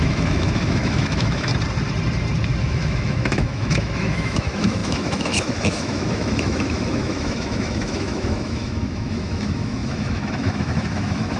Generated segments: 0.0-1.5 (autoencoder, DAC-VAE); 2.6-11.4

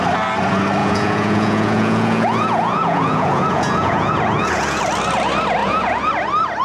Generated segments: 0.8-4.8 (vocoder, Vocos); 5.6-6.1

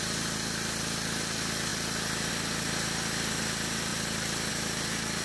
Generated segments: 1.7-2.3 (vocoder, BigVGAN v2); 3.9-4.5

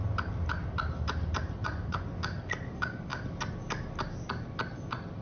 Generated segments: 1.6-2.2 (vocoder, Vocos)

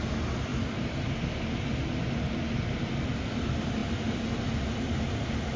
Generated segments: none

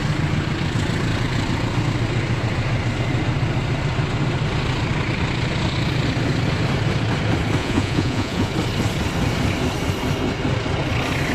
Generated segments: 7.6-8.5 (vocoder, Vocos)